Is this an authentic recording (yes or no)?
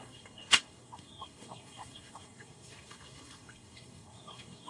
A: no